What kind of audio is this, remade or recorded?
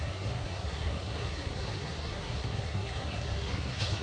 remade